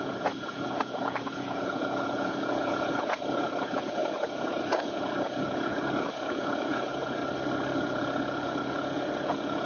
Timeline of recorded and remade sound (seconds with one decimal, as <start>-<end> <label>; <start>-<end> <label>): 0.0-7.2 remade; 7.2-7.8 recorded; 7.8-9.7 remade